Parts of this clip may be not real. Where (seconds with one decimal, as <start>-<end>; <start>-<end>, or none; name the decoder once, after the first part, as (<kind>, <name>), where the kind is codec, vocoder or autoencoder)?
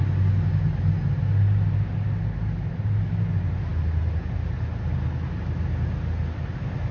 none